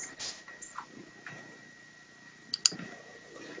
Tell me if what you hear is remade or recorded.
recorded